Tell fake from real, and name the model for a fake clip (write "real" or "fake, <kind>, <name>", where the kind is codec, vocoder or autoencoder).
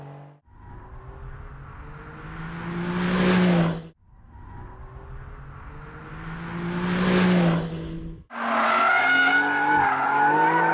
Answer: real